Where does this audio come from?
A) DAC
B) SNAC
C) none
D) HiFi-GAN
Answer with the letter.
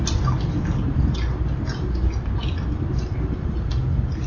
C